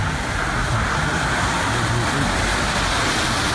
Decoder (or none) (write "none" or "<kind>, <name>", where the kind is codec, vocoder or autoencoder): none